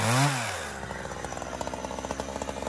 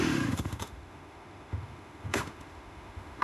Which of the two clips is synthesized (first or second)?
second